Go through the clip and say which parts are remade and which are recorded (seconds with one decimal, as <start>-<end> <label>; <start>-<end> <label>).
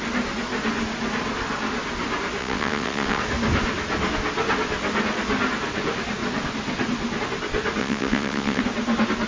0.0-2.4 recorded; 2.4-3.2 remade; 3.2-7.8 recorded; 7.8-8.6 remade; 8.6-9.3 recorded